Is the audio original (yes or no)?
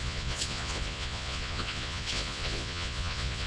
no